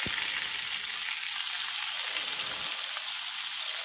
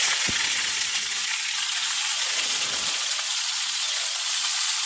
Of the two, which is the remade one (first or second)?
second